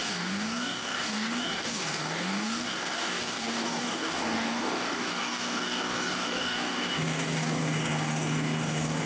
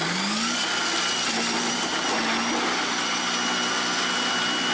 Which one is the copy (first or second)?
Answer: first